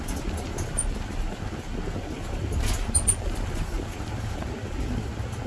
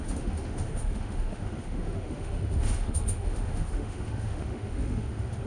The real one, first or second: first